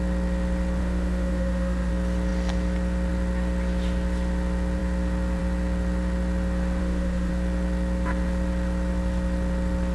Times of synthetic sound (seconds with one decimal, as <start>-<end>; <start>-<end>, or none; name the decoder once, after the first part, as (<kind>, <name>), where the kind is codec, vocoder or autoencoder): 0.8-1.9 (autoencoder, DAC-VAE); 6.8-7.3